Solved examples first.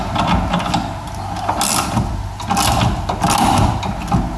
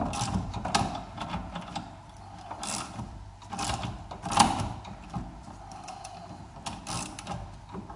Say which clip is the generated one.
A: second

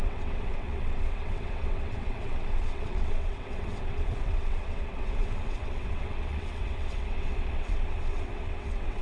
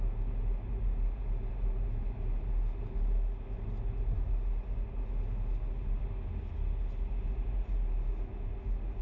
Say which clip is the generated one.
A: first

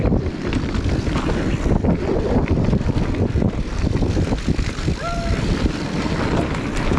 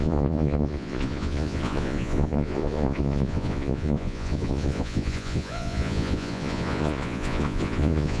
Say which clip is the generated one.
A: second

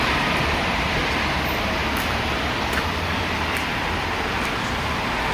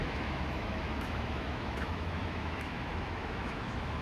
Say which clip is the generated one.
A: second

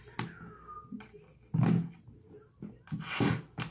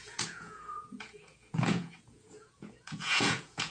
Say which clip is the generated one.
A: second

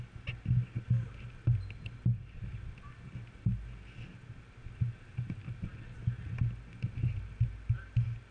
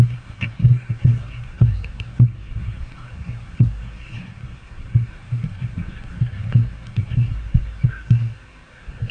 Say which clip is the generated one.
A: second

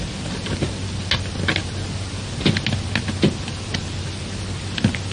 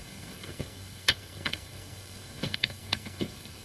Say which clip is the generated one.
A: second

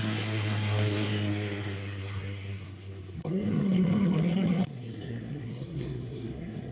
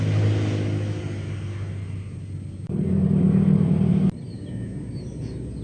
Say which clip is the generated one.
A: first